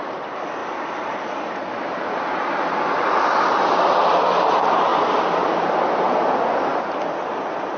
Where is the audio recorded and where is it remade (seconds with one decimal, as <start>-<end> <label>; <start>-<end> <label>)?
0.0-7.8 recorded

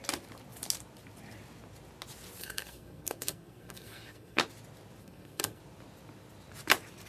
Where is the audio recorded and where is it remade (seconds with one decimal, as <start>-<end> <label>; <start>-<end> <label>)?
0.0-2.4 recorded; 2.4-4.4 remade; 4.4-5.0 recorded; 5.0-5.6 remade; 5.6-7.1 recorded

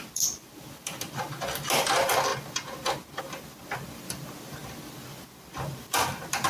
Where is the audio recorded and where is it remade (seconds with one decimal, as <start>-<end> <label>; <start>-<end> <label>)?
0.0-2.3 remade; 2.3-3.2 recorded; 3.2-6.5 remade

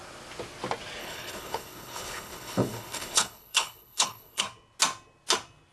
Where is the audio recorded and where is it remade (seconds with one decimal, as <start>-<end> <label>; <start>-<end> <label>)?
0.0-1.0 recorded; 1.0-4.4 remade; 4.4-5.7 recorded

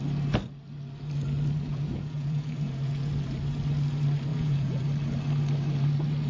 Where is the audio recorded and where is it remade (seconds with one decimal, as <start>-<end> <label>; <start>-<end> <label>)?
0.0-1.7 recorded; 1.7-3.1 remade; 3.1-4.3 recorded; 4.3-4.8 remade; 4.8-6.3 recorded

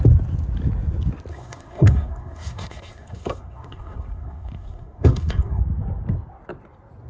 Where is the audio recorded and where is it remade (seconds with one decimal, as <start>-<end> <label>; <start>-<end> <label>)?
0.0-1.3 recorded; 1.3-5.6 remade; 5.6-7.1 recorded

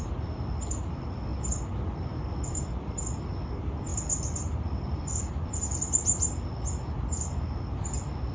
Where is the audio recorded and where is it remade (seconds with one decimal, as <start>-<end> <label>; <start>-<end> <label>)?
0.0-8.3 recorded

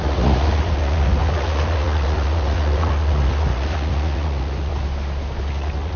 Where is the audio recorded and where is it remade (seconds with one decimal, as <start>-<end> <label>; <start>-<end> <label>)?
0.0-4.7 remade; 4.7-5.5 recorded; 5.5-6.0 remade